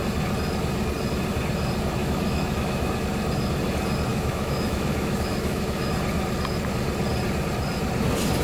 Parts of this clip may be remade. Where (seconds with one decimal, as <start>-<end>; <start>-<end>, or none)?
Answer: 2.0-2.9; 4.1-5.9